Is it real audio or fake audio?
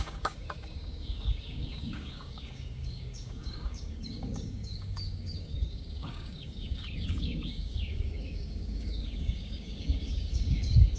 fake